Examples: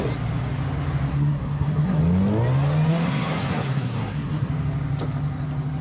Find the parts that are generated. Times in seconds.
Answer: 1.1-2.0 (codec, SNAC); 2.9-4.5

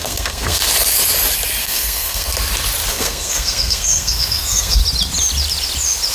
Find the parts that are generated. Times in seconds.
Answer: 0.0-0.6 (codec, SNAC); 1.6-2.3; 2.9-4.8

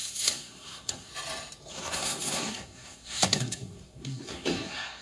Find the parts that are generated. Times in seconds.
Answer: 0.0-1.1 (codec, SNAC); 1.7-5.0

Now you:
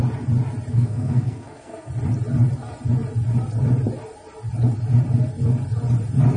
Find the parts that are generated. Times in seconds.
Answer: 0.7-1.9 (codec, SNAC)

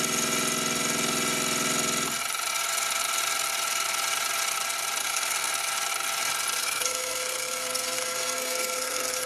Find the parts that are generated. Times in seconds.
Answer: 5.0-5.5 (codec, SNAC); 6.6-9.3